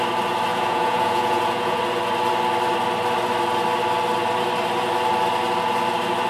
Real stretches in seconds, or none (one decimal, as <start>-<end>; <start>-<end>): 0.0-0.5; 1.8-6.3